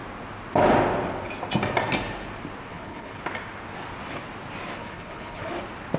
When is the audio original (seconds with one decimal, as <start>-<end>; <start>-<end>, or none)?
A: 0.0-2.7; 3.2-4.8; 5.5-6.0